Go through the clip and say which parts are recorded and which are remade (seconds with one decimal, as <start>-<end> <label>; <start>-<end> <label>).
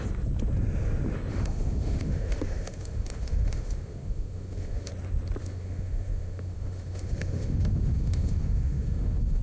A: 0.0-1.3 recorded; 1.3-4.9 remade; 4.9-5.4 recorded; 5.4-9.4 remade